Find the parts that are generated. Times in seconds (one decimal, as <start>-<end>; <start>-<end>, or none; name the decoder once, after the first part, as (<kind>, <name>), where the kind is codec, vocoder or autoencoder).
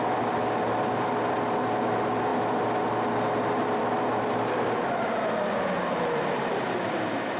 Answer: none